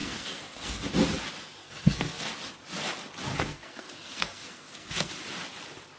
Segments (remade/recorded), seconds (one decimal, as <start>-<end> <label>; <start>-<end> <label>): 0.0-0.9 remade; 0.9-1.6 recorded; 1.6-2.3 remade; 2.3-3.3 recorded; 3.3-5.1 remade; 5.1-6.0 recorded